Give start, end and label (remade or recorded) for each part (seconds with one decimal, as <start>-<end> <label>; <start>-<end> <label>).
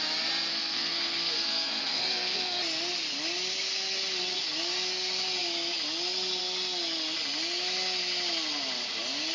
0.0-0.5 recorded; 0.5-2.6 remade; 2.6-9.3 recorded